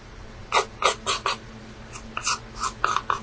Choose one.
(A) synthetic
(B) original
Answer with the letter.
B